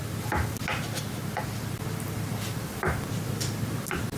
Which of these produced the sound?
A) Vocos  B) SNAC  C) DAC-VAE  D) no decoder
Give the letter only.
D